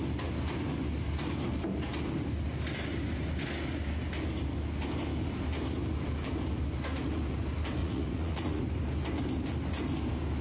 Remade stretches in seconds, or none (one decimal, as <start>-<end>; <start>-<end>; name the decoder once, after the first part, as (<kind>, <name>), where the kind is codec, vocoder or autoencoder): 7.8-8.6 (vocoder, Vocos)